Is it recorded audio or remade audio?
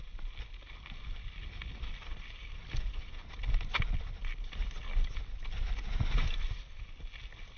recorded